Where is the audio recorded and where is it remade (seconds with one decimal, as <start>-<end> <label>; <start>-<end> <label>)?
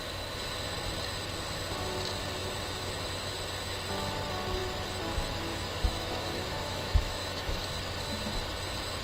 0.0-2.4 recorded; 2.4-3.3 remade; 3.3-5.5 recorded; 5.5-7.7 remade; 7.7-9.0 recorded